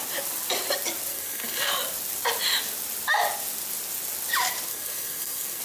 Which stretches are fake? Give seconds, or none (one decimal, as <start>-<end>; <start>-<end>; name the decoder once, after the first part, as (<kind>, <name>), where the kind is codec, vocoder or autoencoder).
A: 1.1-1.7 (codec, SNAC); 4.7-5.6